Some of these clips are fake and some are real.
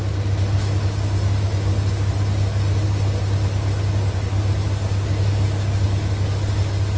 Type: real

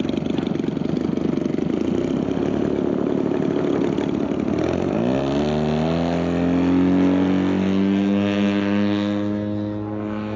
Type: real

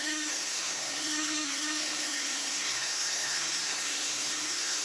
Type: fake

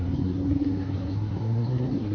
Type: fake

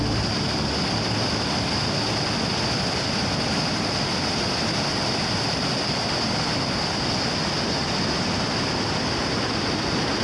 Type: real